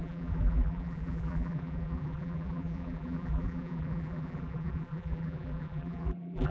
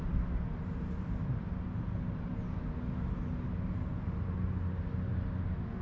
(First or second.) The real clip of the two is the second